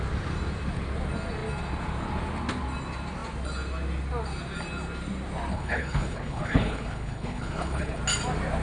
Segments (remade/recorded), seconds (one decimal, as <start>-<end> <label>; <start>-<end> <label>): 0.0-5.5 recorded; 5.5-8.0 remade; 8.0-8.6 recorded